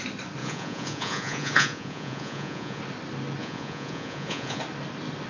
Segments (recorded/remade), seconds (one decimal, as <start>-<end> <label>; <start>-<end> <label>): 0.0-0.4 recorded; 0.4-2.8 remade; 2.8-3.4 recorded; 3.4-4.6 remade; 4.6-5.3 recorded